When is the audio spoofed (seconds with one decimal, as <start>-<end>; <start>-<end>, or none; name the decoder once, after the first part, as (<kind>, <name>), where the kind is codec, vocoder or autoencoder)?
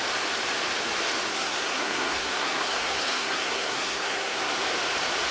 1.3-4.5 (codec, SNAC)